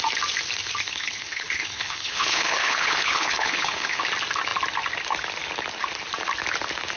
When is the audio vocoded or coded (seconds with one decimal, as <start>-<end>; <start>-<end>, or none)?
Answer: 0.9-4.0

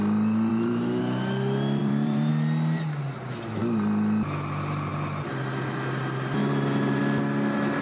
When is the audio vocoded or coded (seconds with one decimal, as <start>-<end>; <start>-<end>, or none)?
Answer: 0.5-1.0; 1.8-2.3; 6.4-7.0

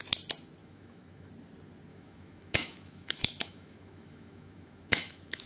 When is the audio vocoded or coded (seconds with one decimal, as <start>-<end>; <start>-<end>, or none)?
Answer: 0.6-1.3; 1.9-5.5

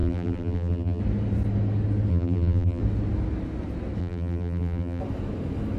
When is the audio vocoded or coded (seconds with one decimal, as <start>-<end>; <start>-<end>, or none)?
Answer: 0.0-1.0; 2.1-2.8; 4.0-5.0

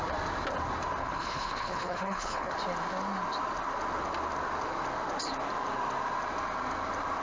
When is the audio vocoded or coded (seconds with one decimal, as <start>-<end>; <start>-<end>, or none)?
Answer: 1.0-2.5

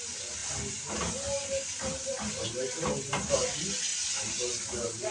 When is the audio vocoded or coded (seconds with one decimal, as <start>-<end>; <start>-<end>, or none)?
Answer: none

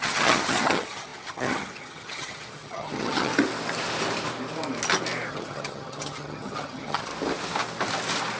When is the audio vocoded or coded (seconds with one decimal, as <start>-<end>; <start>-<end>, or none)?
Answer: 0.0-3.3; 5.3-7.1

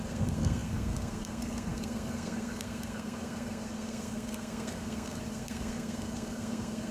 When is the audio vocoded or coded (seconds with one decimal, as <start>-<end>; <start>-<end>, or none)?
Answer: 0.0-6.9